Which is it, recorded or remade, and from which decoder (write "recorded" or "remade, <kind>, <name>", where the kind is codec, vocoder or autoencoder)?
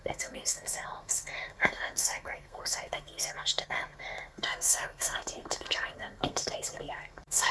remade, codec, SNAC